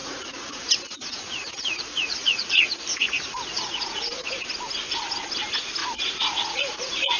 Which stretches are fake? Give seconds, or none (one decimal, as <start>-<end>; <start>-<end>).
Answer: 0.0-4.3; 5.8-7.2